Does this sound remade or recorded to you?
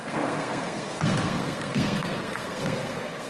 remade